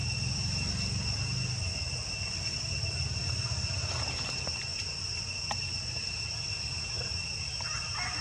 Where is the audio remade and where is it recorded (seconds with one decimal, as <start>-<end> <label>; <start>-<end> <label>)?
0.0-8.2 recorded

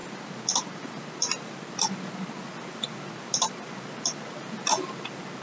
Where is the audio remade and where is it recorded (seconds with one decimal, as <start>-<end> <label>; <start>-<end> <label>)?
0.0-5.4 recorded

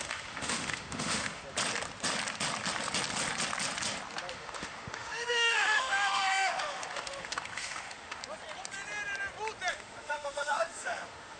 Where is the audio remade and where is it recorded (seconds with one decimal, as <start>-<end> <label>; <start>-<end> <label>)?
0.0-1.4 remade; 1.4-4.3 recorded; 4.3-8.2 remade; 8.2-9.7 recorded; 9.7-11.4 remade

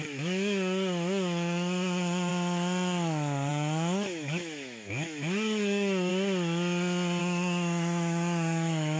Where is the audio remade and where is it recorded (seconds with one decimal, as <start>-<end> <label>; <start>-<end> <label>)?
0.0-2.3 remade; 2.3-3.5 recorded; 3.5-6.1 remade; 6.1-7.2 recorded; 7.2-9.0 remade

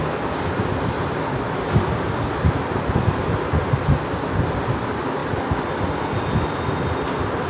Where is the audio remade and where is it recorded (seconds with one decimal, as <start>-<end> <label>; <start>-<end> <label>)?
0.0-7.5 recorded